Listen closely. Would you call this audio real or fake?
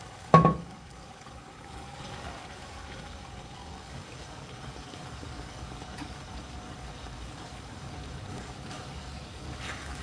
fake